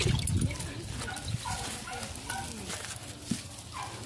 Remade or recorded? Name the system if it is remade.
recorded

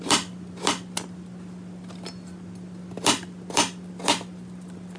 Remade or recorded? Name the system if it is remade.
recorded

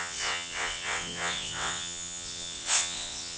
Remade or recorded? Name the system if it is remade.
remade, vocoder, WaveNeXt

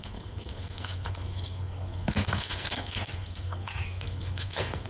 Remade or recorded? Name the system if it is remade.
remade, codec, SNAC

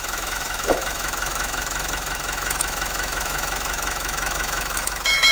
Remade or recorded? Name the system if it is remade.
remade, autoencoder, DAC-VAE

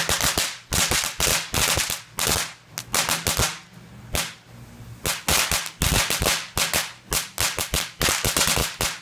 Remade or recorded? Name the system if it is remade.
recorded